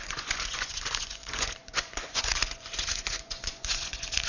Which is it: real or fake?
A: fake